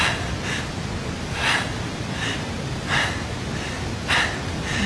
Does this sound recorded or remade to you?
recorded